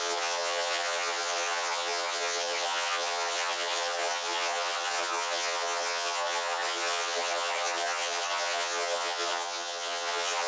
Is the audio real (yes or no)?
no